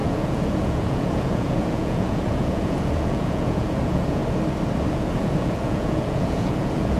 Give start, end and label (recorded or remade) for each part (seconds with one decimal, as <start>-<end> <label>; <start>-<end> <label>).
0.0-4.2 remade; 4.2-4.9 recorded; 4.9-7.0 remade